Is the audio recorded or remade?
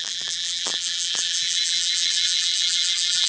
remade